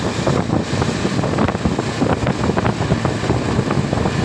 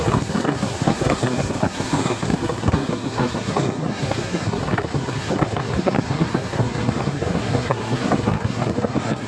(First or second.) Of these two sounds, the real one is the first